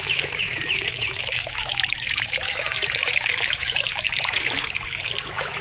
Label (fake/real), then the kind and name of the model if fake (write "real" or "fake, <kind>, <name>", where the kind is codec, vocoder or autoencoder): fake, autoencoder, DAC-VAE